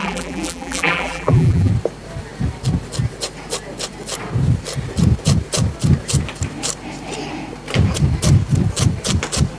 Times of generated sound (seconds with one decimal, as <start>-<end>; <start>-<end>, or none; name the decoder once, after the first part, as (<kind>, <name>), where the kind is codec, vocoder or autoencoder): 0.0-1.7 (vocoder, BigVGAN v2)